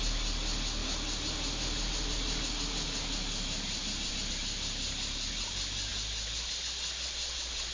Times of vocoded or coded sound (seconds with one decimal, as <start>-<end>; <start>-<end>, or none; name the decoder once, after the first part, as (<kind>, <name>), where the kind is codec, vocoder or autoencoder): none